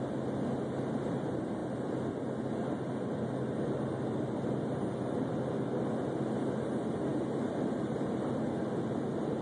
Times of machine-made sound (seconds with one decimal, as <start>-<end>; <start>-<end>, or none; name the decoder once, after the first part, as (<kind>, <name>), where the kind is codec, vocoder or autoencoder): none